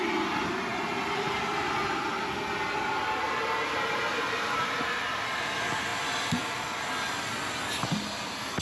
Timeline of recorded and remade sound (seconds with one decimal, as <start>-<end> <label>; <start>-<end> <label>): 0.0-8.6 recorded